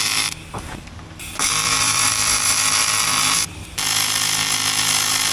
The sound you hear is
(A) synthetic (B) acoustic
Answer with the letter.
A